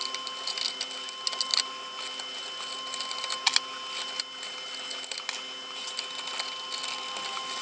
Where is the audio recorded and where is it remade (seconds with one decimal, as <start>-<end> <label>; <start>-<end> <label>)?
0.0-7.6 recorded